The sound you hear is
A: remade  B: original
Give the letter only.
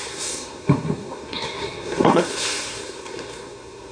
A